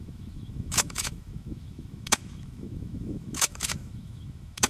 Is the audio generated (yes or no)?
yes